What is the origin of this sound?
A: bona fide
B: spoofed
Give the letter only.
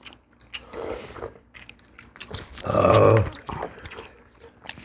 B